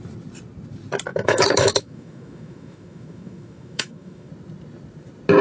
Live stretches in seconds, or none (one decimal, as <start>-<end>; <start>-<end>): 0.0-1.1; 4.3-5.4